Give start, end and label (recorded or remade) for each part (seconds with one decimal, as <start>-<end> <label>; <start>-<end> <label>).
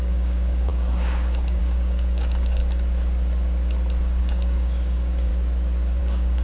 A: 0.0-2.6 remade; 2.6-4.2 recorded; 4.2-5.3 remade; 5.3-6.0 recorded; 6.0-6.4 remade